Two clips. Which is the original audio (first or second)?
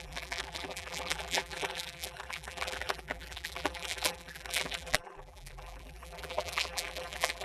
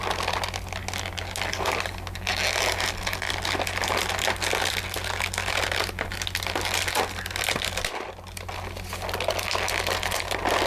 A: second